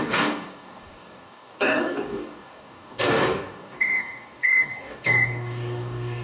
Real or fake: fake